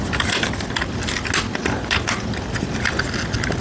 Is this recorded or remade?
recorded